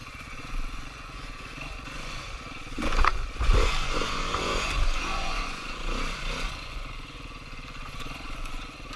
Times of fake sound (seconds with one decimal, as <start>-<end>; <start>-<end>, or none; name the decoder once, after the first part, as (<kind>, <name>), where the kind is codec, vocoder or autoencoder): 0.0-9.0 (vocoder, Vocos)